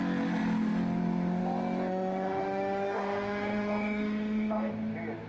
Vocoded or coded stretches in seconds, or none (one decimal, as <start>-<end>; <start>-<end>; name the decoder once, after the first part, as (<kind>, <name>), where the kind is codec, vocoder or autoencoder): 1.9-4.7 (autoencoder, DAC-VAE)